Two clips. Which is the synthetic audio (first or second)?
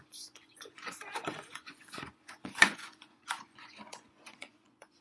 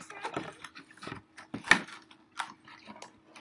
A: first